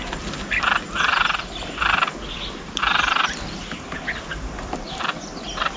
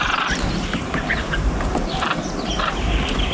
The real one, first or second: first